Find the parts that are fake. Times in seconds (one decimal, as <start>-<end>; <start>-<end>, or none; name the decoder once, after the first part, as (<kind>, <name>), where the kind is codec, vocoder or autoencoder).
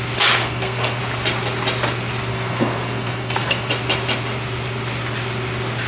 0.4-1.0 (codec, SNAC); 2.3-3.7